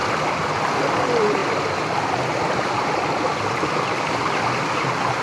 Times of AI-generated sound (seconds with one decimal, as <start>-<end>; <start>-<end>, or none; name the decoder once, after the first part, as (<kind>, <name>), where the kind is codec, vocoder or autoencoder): none